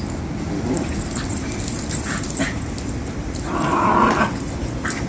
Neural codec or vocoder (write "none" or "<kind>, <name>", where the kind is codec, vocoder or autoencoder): none